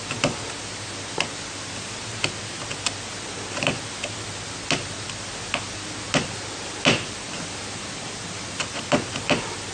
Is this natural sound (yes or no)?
yes